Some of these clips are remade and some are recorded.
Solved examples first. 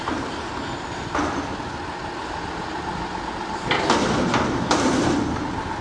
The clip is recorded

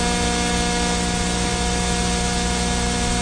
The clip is recorded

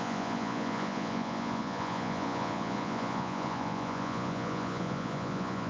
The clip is remade